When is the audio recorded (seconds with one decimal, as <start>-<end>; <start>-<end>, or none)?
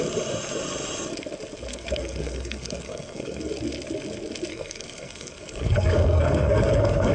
0.0-1.7; 3.5-4.5